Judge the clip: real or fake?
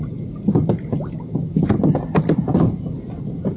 real